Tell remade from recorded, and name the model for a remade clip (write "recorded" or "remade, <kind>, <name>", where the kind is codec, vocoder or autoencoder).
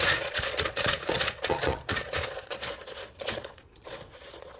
remade, vocoder, Vocos